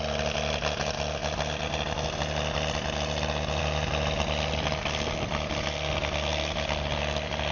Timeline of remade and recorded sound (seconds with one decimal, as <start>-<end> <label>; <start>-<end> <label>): 0.0-7.5 recorded